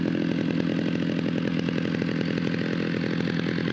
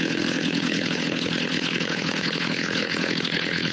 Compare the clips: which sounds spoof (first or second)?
second